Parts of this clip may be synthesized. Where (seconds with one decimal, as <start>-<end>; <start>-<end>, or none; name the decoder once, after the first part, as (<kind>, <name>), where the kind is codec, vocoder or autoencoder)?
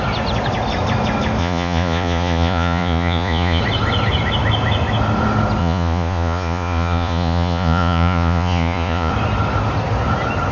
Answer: 1.4-3.6 (vocoder, Vocos); 5.6-9.1